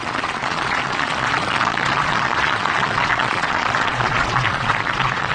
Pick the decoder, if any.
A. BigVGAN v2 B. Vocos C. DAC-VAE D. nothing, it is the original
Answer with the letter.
B